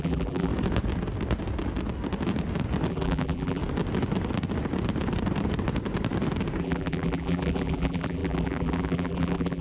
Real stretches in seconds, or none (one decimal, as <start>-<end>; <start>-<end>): 0.5-2.9; 3.6-6.6